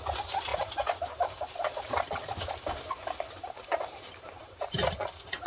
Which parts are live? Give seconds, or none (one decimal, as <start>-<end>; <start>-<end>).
4.8-5.5